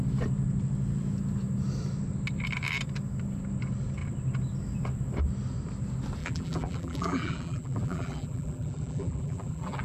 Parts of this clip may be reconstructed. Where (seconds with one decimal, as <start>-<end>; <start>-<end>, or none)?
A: 6.2-9.8

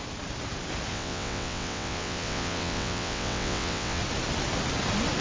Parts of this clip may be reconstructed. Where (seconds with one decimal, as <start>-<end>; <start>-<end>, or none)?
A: 0.9-4.0

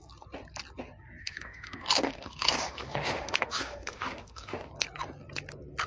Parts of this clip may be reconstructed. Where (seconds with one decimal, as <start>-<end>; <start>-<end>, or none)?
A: 1.2-4.7

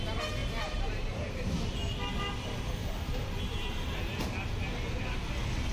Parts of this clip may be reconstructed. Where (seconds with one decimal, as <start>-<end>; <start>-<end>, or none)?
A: 0.4-1.5; 2.8-4.0

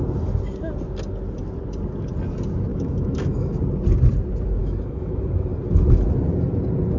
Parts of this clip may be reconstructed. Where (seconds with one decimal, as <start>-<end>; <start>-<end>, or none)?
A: 2.7-3.6; 4.6-5.2

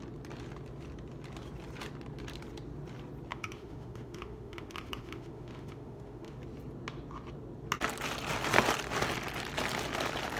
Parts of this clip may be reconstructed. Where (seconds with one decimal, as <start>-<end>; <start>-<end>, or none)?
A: 3.3-6.4